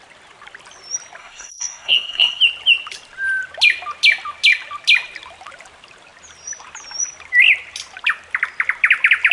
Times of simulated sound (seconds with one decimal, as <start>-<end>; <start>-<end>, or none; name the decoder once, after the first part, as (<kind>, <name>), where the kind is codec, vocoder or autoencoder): 1.2-2.4 (codec, SNAC)